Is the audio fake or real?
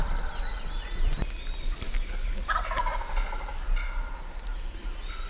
real